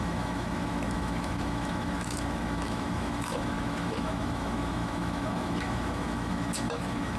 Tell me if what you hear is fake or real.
fake